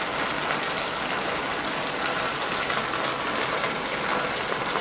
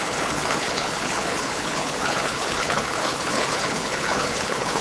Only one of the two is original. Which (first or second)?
first